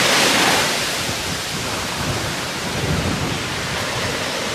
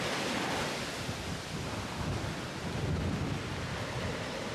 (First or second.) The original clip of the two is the second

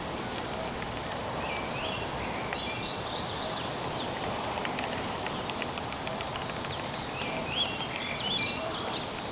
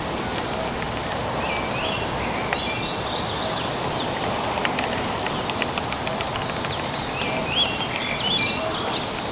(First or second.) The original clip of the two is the second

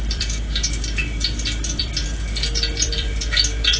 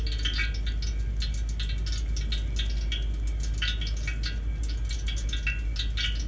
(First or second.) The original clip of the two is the second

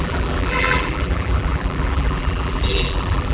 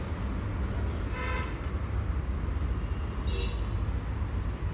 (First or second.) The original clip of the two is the second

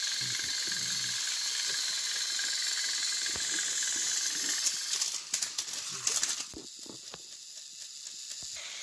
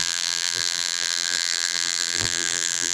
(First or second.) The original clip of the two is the first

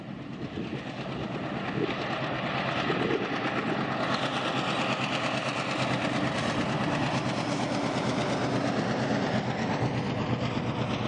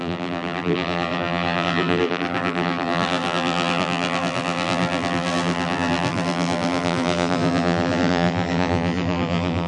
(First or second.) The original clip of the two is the first